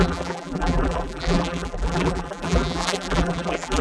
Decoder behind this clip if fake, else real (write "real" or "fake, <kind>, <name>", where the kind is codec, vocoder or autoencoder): fake, vocoder, BigVGAN v2